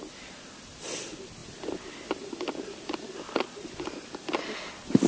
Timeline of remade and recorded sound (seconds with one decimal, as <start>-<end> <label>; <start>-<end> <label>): 0.0-5.1 recorded